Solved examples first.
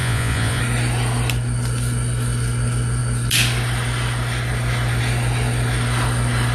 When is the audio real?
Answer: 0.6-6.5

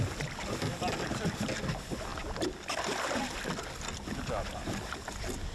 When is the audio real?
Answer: 0.0-2.1; 3.4-5.5